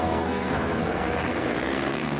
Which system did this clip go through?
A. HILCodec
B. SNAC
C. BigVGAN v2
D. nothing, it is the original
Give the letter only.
B